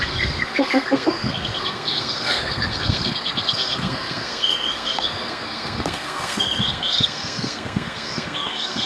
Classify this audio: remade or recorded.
remade